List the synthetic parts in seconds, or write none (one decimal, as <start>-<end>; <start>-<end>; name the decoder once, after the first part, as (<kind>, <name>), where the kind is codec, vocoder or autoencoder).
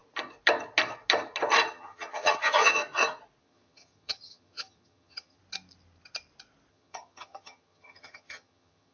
1.7-2.8 (vocoder, HiFi-GAN); 3.4-5.4; 6.7-8.9